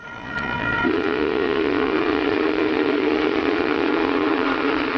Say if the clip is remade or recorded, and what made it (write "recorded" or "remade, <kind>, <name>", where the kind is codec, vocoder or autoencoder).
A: remade, vocoder, Vocos